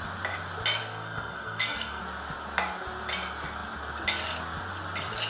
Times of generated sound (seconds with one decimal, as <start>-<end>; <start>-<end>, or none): 0.8-2.0